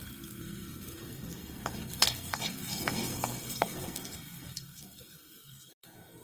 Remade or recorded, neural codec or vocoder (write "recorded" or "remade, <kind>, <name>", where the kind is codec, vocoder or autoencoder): remade, codec, SNAC